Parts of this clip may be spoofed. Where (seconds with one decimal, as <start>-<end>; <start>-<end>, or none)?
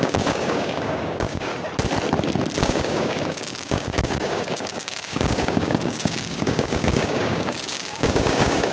0.0-1.5; 2.6-8.7